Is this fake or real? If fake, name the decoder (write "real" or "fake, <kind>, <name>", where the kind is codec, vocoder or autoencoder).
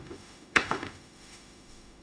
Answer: fake, autoencoder, DAC-VAE